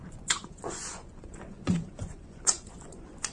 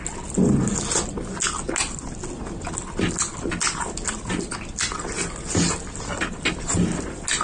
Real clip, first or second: second